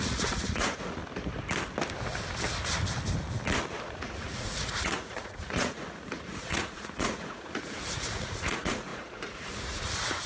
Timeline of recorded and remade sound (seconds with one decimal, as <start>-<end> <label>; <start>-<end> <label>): 0.0-1.0 remade; 1.0-3.8 recorded; 3.8-10.3 remade